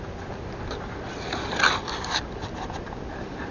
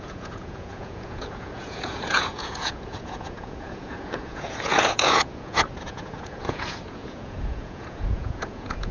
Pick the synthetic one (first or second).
second